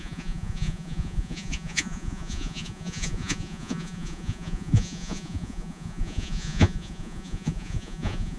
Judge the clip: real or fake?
fake